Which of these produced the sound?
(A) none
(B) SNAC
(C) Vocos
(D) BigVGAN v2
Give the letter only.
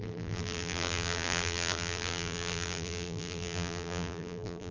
D